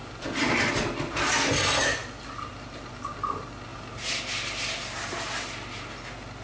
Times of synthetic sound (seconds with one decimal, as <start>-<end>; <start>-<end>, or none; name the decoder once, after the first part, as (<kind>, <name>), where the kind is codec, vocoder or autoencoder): 0.0-0.7 (vocoder, BigVGAN v2); 2.0-2.9